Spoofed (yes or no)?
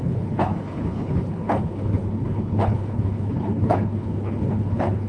yes